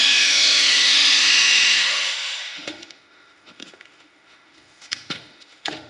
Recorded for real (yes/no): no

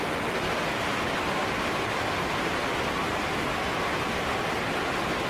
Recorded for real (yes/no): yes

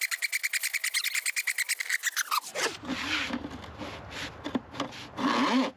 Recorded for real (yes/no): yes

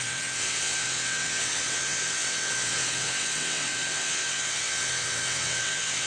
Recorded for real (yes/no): no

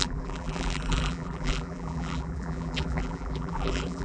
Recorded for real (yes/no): no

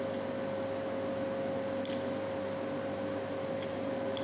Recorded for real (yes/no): yes